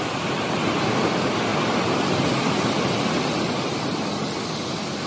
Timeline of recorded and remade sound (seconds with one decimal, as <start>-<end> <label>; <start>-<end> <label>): 0.0-5.1 recorded